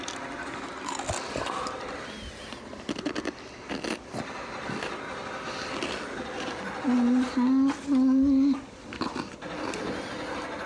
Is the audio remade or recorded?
recorded